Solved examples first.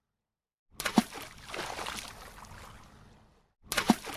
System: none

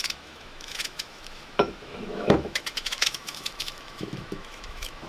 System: autoencoder, DAC-VAE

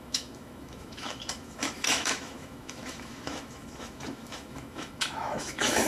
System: autoencoder, DAC-VAE